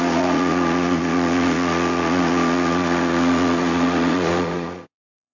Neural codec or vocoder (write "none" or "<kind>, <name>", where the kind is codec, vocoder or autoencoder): vocoder, Vocos